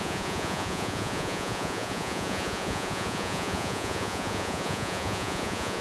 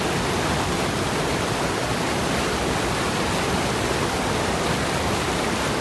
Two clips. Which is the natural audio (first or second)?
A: second